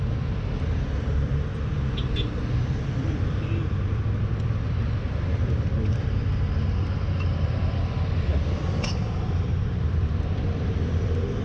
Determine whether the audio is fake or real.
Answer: fake